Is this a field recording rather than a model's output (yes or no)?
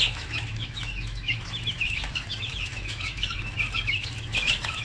no